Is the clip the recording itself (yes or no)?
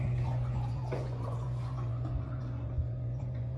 no